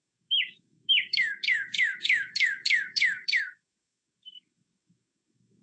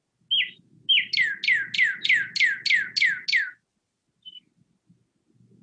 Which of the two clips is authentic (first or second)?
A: second